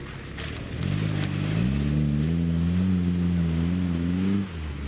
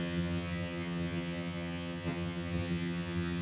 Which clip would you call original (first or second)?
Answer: first